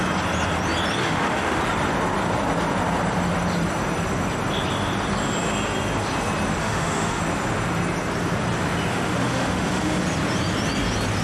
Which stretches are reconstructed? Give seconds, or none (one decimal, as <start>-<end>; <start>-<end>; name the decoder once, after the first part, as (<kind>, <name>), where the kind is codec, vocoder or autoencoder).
1.0-1.6 (autoencoder, DAC-VAE); 6.6-7.2; 8.9-10.0